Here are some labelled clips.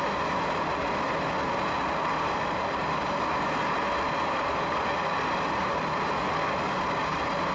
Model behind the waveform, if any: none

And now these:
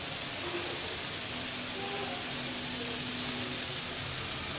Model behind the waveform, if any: none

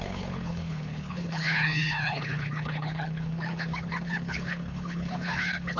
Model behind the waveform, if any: codec, HILCodec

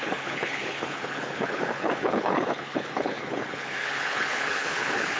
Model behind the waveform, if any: codec, HILCodec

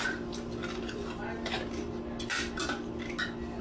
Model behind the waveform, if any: none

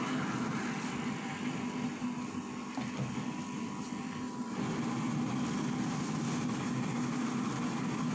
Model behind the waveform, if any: none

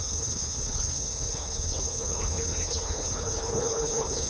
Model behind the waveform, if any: codec, HILCodec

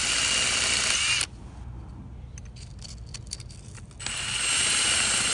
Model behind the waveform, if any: none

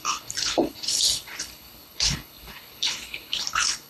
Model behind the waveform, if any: codec, HILCodec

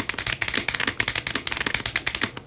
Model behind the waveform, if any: none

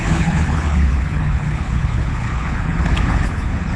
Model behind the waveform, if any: codec, HILCodec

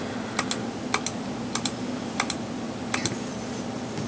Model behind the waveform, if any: none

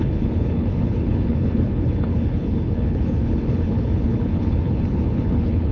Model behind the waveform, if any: codec, HILCodec